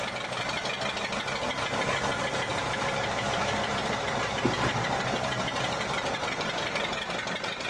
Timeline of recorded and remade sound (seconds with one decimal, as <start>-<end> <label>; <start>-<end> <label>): 0.0-2.5 recorded; 2.5-5.4 remade; 5.4-7.7 recorded